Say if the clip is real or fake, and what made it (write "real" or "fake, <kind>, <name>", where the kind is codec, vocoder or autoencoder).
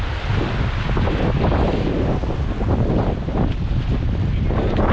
real